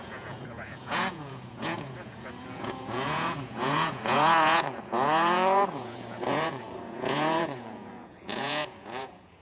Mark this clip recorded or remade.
remade